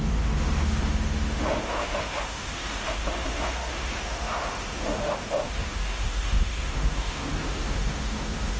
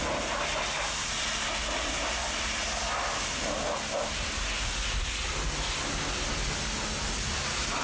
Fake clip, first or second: first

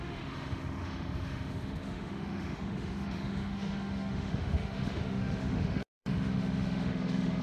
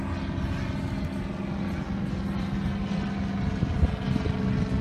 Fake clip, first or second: first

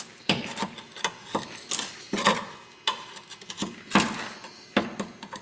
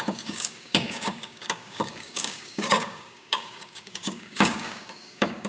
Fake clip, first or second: second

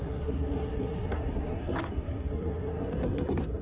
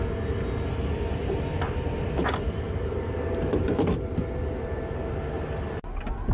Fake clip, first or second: first